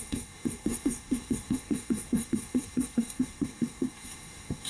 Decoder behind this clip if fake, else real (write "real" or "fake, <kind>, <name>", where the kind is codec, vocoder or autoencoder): fake, codec, SNAC